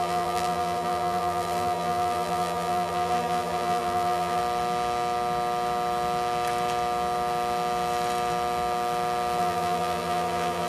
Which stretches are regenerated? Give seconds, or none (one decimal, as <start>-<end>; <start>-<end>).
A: 0.0-4.4; 9.4-10.7